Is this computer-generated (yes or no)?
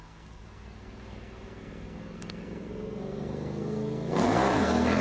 yes